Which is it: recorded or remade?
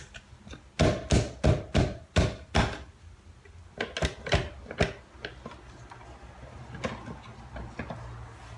recorded